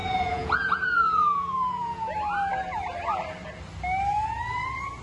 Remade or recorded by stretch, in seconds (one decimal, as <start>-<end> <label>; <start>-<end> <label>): 0.0-2.1 remade; 2.1-5.0 recorded

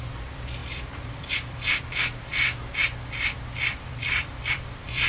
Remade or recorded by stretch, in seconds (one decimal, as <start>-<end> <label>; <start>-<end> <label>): 0.0-2.3 remade; 2.3-3.7 recorded; 3.7-5.1 remade

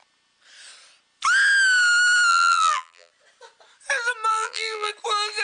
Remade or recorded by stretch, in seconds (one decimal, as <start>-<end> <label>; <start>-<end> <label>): 0.0-2.3 recorded; 2.3-3.1 remade; 3.1-4.3 recorded; 4.3-4.9 remade; 4.9-5.4 recorded

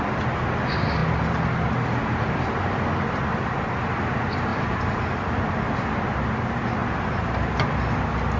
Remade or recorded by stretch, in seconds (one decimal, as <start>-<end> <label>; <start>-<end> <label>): 0.0-4.5 recorded; 4.5-5.5 remade; 5.5-8.4 recorded